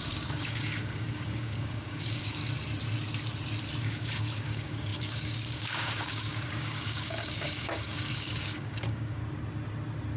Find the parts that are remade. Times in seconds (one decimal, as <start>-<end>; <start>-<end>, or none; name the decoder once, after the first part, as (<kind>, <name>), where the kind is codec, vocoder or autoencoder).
0.0-2.4 (codec, DAC); 3.8-9.2